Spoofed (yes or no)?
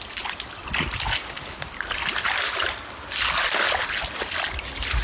no